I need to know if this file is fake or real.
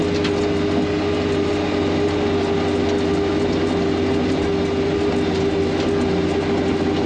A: real